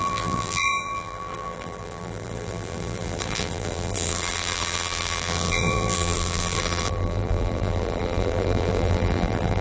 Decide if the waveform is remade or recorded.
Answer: remade